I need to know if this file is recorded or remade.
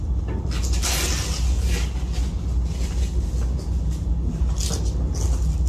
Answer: recorded